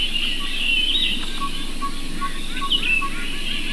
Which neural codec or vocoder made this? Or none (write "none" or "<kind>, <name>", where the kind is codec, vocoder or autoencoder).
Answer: none